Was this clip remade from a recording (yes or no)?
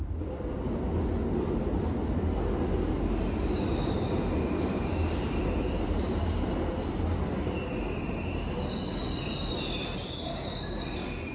no